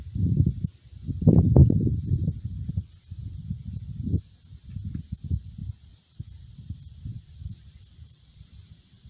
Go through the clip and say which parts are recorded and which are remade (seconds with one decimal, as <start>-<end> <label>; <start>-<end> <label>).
0.0-1.6 recorded; 1.6-2.6 remade; 2.6-5.6 recorded; 5.6-6.2 remade; 6.2-7.1 recorded; 7.1-8.5 remade; 8.5-9.1 recorded